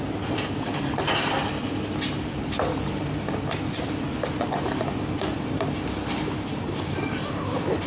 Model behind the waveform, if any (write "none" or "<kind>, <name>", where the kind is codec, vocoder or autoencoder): none